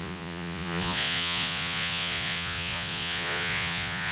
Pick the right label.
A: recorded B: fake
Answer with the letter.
B